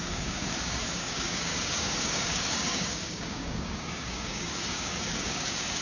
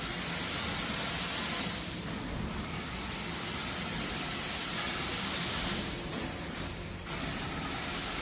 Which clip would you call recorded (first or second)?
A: second